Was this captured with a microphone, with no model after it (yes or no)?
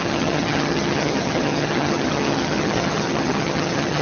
no